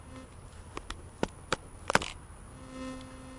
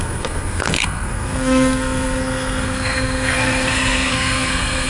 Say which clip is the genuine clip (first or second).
first